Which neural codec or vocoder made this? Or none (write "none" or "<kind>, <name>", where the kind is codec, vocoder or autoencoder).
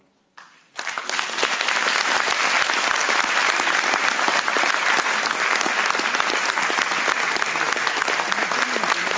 none